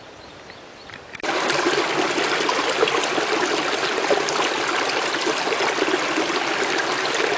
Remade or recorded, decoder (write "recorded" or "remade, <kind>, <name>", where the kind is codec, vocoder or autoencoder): recorded